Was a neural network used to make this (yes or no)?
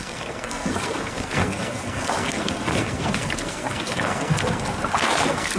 yes